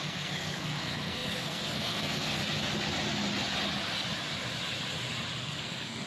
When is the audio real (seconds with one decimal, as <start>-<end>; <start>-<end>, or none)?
2.4-5.4